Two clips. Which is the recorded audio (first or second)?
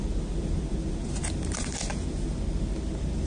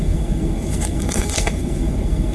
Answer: first